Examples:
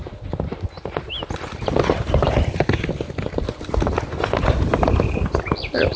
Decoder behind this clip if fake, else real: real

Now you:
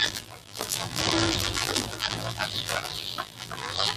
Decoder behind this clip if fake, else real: fake, vocoder, BigVGAN v2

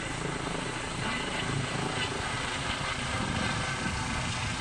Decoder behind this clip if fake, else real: real